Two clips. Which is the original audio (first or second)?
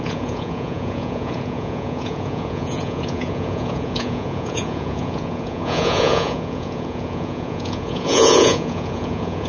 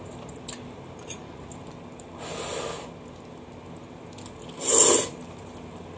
second